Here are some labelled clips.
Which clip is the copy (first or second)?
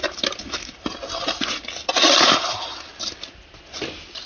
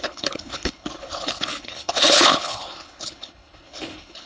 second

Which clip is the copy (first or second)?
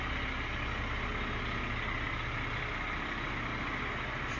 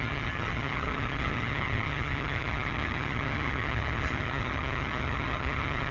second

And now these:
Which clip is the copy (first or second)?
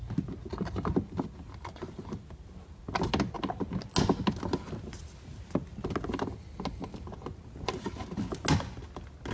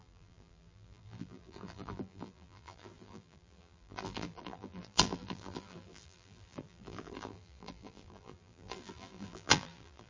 second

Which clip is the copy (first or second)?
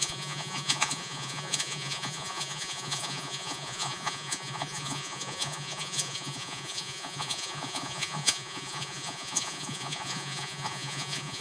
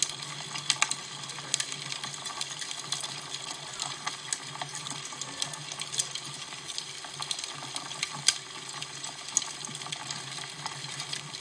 first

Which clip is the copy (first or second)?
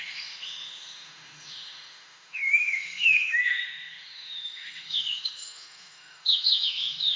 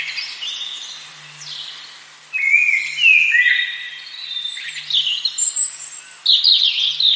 first